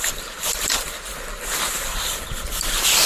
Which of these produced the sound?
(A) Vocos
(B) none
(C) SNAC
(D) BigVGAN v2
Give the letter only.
D